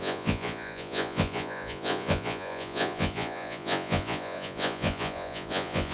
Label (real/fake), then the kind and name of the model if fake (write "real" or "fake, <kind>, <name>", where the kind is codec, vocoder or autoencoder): fake, vocoder, Vocos